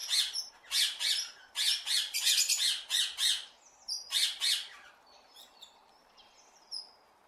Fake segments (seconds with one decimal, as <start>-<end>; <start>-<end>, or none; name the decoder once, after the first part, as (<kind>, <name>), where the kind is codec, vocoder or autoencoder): none